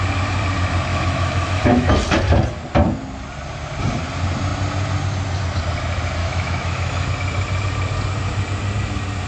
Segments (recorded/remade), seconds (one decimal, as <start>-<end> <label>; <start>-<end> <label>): 0.0-0.9 recorded; 0.9-1.9 remade; 1.9-6.2 recorded; 6.2-7.1 remade; 7.1-9.3 recorded